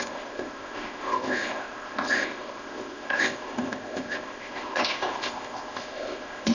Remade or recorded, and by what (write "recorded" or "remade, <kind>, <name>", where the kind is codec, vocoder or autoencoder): remade, codec, ZipCodec